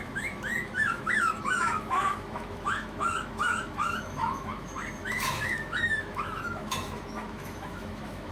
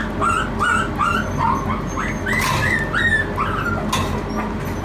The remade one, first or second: first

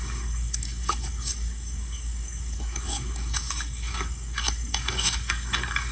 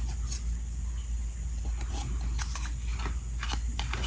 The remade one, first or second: first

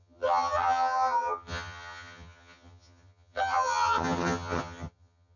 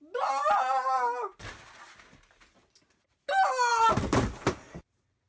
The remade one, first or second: first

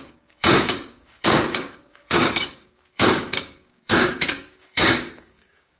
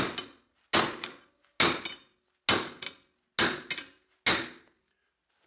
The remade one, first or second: first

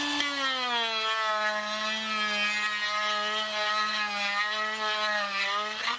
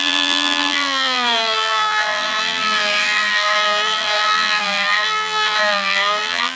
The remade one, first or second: second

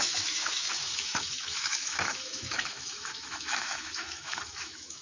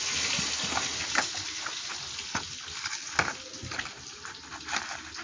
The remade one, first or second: first